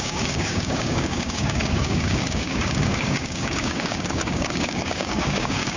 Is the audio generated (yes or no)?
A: yes